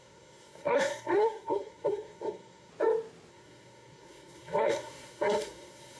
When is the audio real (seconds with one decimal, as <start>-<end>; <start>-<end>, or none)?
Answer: 2.7-3.3